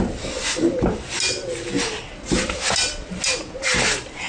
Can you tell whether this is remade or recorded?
recorded